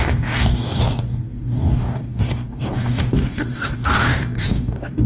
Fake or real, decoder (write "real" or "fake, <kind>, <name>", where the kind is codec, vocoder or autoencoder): fake, codec, DAC